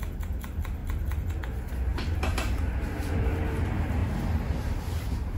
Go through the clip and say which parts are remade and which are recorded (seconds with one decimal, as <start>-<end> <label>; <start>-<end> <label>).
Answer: 0.0-0.8 recorded; 0.8-1.3 remade; 1.3-1.9 recorded; 1.9-2.6 remade; 2.6-5.4 recorded